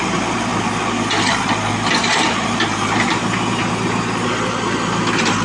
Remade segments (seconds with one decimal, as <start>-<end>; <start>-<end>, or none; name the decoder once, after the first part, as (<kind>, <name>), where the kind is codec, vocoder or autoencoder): none